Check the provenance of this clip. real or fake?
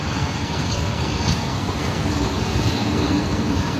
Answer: fake